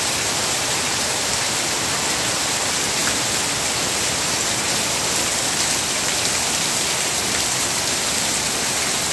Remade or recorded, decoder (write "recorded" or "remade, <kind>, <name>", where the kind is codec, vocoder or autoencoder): recorded